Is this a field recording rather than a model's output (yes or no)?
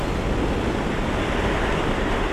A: yes